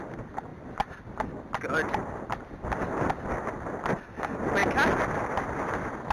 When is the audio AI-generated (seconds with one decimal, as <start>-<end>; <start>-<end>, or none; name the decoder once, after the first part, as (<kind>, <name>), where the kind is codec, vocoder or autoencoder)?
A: none